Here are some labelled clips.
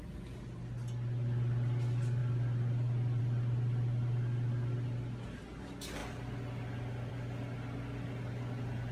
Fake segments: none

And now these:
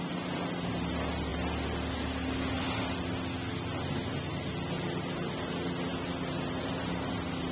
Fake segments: none

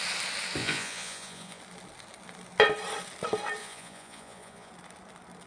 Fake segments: 0.6-1.6 (vocoder, Vocos); 3.6-4.7

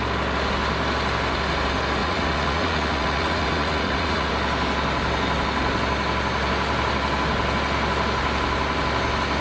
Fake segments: 2.0-4.3 (vocoder, Vocos)

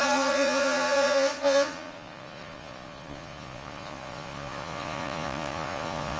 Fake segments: 0.0-6.2 (vocoder, Vocos)

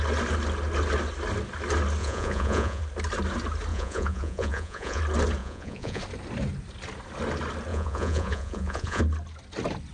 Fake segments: 2.0-2.8 (vocoder, Vocos); 3.7-5.0; 5.4-6.0; 7.7-9.0